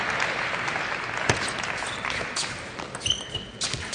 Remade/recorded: recorded